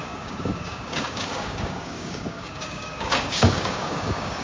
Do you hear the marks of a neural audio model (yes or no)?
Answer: yes